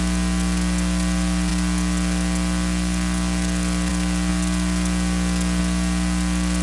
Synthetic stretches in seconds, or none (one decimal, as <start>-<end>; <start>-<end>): none